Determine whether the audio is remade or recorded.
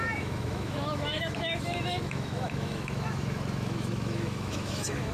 remade